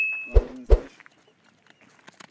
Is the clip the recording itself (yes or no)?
yes